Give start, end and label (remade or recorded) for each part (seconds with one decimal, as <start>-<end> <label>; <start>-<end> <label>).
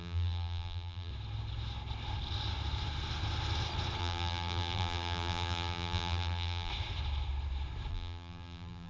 0.0-1.1 remade; 1.1-4.0 recorded; 4.0-6.7 remade; 6.7-7.9 recorded; 7.9-8.9 remade